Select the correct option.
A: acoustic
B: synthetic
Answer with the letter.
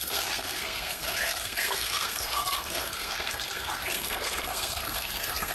B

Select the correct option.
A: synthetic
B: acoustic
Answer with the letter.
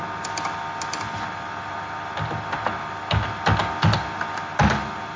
B